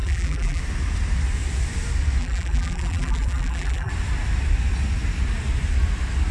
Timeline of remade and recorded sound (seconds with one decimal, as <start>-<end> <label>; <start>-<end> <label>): 0.0-0.6 remade; 0.6-2.2 recorded; 2.2-3.9 remade; 3.9-6.3 recorded